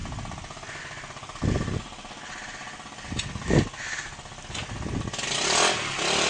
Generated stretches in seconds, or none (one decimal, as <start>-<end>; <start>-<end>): none